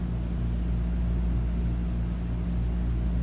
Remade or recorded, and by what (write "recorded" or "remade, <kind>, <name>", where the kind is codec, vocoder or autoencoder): recorded